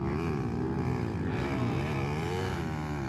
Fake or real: real